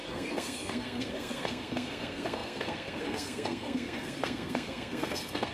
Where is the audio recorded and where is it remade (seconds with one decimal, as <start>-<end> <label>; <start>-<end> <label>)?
0.0-5.5 remade